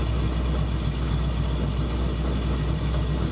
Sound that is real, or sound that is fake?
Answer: real